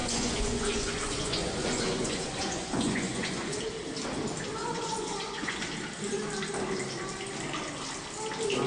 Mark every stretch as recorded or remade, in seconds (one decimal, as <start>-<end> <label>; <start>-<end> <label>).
0.0-3.6 remade; 3.6-4.6 recorded; 4.6-5.6 remade; 5.6-8.7 recorded